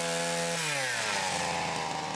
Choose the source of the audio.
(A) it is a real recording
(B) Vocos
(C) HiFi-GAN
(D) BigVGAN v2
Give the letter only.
A